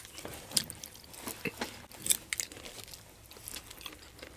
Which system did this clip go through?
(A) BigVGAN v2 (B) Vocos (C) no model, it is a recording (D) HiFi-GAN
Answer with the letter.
C